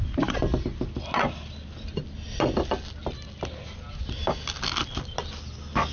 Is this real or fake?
real